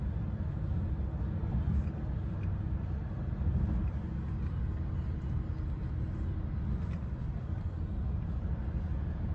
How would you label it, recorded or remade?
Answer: recorded